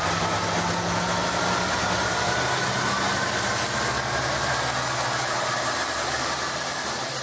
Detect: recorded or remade recorded